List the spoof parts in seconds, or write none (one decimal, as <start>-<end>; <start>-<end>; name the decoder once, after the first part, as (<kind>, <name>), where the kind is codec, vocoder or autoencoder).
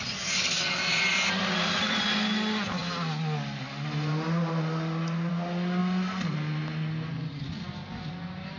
none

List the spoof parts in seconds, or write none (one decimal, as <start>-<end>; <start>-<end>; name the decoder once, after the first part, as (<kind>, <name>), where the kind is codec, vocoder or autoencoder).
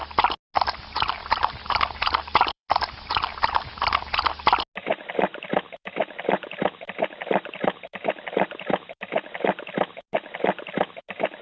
1.2-2.7 (vocoder, BigVGAN v2); 5.3-9.0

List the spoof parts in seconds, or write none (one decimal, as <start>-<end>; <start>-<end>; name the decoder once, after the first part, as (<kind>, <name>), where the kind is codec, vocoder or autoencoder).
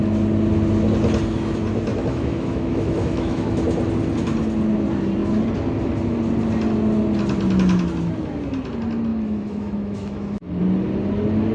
1.9-3.6 (autoencoder, DAC-VAE); 9.1-10.6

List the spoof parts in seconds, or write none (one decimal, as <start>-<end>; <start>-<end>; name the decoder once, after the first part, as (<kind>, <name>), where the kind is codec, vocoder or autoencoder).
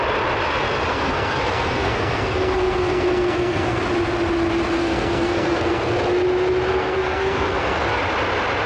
0.9-3.8 (codec, SNAC); 4.8-5.9; 6.7-8.0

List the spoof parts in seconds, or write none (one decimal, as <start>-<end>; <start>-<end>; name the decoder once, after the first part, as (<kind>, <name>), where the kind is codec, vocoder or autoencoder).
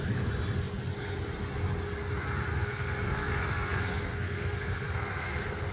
2.5-5.7 (codec, SNAC)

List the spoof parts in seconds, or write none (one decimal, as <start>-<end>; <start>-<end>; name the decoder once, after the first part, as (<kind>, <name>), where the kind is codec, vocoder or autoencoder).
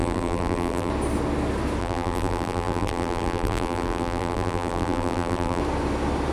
0.0-0.9 (vocoder, BigVGAN v2); 1.8-5.6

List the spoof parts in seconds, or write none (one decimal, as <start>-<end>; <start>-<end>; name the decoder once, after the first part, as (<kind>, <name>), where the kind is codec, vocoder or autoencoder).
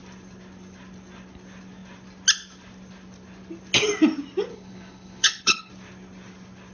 4.5-5.7 (codec, HILCodec)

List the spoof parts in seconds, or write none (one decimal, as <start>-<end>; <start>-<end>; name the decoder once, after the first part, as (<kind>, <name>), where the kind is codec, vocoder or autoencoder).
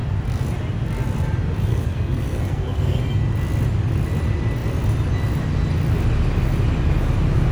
1.7-3.0 (codec, SNAC)